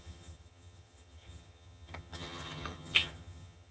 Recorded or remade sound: remade